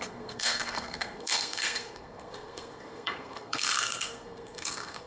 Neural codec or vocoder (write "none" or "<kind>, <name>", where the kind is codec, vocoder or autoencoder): codec, SNAC